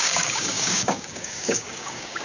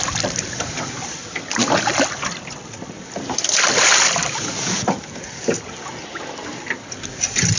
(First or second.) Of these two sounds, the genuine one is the second